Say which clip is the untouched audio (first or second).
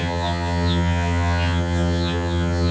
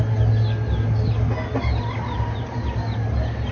second